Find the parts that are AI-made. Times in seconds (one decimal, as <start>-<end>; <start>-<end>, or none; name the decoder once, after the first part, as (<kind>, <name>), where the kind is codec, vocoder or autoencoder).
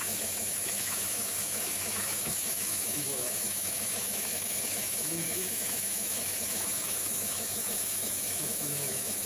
0.0-9.3 (autoencoder, DAC-VAE)